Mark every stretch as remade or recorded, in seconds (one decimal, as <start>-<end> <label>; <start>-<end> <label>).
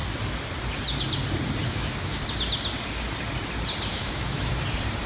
0.0-1.6 recorded; 1.6-2.2 remade; 2.2-3.9 recorded; 3.9-4.5 remade; 4.5-5.1 recorded